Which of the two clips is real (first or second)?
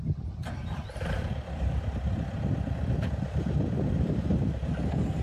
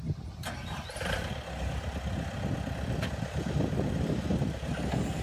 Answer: second